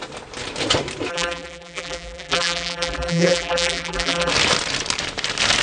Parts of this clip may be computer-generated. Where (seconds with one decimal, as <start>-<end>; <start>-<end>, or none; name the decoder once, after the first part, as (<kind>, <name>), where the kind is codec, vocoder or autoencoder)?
1.1-4.3 (vocoder, BigVGAN v2)